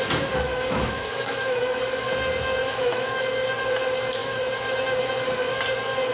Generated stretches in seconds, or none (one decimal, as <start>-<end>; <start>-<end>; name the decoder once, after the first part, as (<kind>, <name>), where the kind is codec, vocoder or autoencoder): 0.5-1.6 (autoencoder, DAC-VAE); 2.6-3.2